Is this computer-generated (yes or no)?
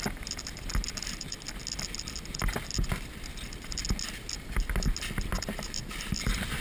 no